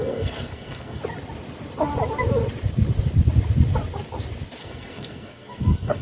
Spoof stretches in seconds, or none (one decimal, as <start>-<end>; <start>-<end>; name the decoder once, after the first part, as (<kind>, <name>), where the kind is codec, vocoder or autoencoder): 0.0-1.0 (codec, SNAC); 4.6-6.0